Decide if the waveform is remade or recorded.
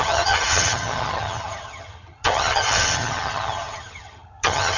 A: remade